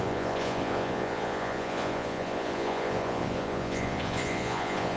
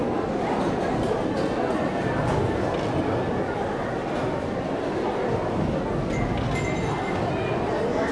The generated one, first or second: first